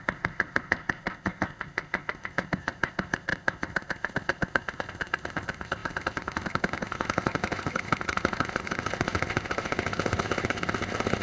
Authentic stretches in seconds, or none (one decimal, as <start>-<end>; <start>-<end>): none